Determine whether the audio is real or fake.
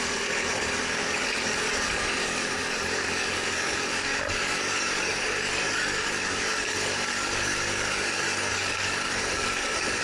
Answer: fake